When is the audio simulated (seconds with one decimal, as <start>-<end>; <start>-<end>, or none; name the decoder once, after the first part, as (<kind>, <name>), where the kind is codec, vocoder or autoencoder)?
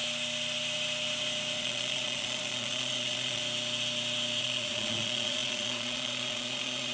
1.6-3.4 (vocoder, Vocos); 4.4-6.9